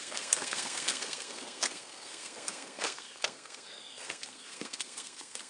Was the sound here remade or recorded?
remade